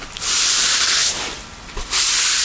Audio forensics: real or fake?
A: real